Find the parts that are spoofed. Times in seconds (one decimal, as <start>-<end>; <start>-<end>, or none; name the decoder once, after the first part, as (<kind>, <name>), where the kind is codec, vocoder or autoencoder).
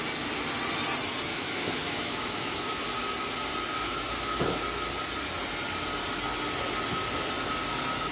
1.3-2.8 (autoencoder, DAC-VAE); 3.7-4.6